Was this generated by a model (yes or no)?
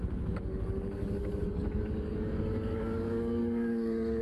yes